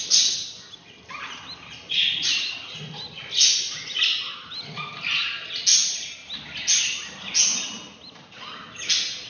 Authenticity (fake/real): real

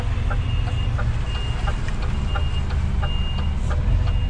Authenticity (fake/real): real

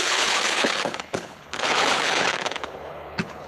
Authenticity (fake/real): fake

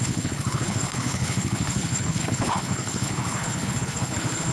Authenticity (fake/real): fake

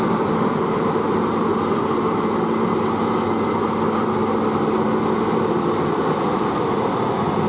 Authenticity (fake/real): real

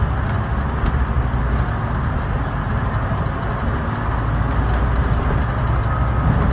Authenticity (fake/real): real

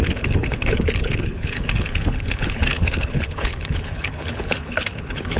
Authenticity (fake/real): fake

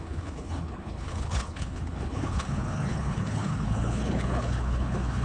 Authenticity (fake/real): fake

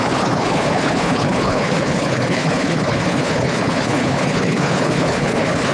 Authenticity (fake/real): fake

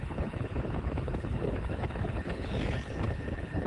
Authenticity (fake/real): fake